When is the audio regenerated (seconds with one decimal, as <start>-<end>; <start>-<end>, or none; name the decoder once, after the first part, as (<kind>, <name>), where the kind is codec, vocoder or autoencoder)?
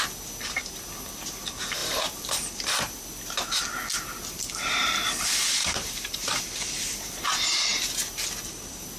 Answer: 1.8-2.3 (vocoder, BigVGAN v2); 5.6-6.4